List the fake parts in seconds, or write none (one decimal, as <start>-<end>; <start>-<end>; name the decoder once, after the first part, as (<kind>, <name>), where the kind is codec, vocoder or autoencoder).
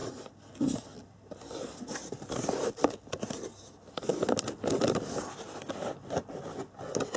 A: none